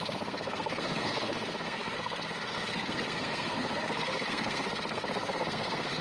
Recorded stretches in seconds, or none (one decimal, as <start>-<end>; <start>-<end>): none